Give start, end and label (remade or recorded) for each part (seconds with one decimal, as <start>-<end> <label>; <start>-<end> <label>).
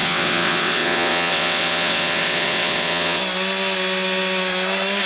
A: 0.0-3.2 remade; 3.2-5.1 recorded